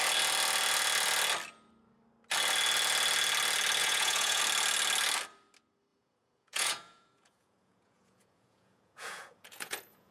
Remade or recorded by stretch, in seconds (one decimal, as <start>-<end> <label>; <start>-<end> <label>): 0.0-3.8 recorded; 3.8-4.4 remade; 4.4-5.9 recorded; 5.9-10.1 remade